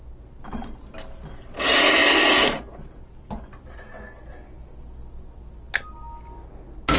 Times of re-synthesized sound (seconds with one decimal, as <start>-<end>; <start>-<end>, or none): none